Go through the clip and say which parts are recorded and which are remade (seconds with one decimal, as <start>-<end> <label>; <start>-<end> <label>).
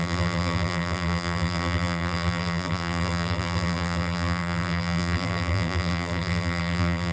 0.0-7.1 remade